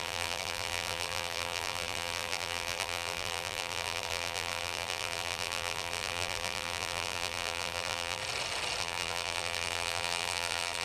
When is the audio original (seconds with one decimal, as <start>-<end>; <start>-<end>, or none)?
8.2-8.8

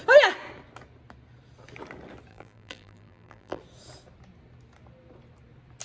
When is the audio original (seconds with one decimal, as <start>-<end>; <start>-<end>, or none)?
0.0-2.3; 3.6-5.8